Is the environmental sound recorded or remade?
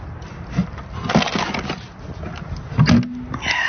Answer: recorded